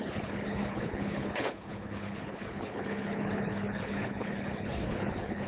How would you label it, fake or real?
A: fake